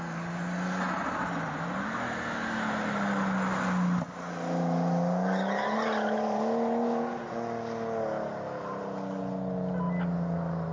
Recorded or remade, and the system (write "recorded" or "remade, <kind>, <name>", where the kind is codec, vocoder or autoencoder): recorded